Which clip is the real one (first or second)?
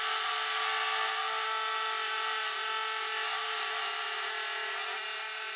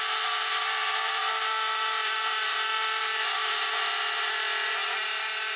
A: first